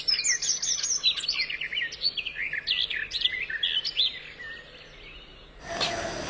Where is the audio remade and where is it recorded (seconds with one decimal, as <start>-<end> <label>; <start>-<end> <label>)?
0.0-6.3 recorded